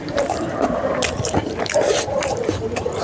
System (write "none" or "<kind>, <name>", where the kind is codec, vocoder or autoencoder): vocoder, BigVGAN v2